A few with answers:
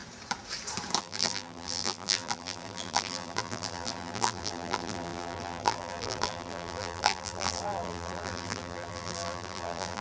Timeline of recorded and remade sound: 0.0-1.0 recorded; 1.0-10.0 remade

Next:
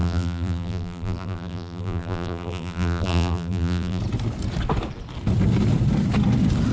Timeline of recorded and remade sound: 0.0-4.0 remade; 4.0-6.7 recorded